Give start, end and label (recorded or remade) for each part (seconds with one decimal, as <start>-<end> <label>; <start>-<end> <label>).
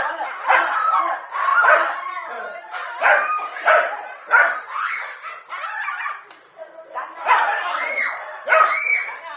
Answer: 0.0-1.5 remade; 1.5-2.3 recorded; 2.3-9.4 remade